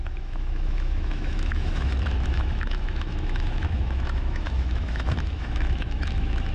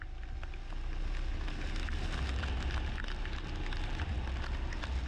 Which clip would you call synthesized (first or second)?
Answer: first